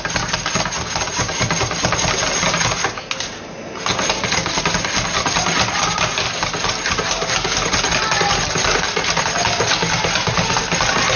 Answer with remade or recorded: recorded